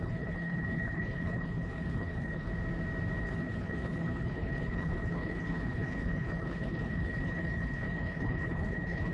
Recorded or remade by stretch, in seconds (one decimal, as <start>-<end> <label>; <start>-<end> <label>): 0.0-2.5 remade; 2.5-3.2 recorded; 3.2-9.1 remade